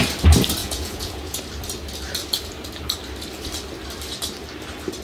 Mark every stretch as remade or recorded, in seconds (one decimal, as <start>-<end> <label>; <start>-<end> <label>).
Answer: 0.0-0.6 recorded; 0.6-1.4 remade; 1.4-5.0 recorded